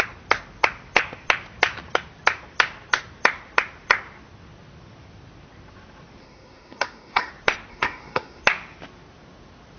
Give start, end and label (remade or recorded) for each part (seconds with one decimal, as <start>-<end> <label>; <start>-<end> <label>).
0.0-6.2 recorded; 6.2-7.3 remade; 7.3-7.7 recorded; 7.7-8.4 remade; 8.4-9.8 recorded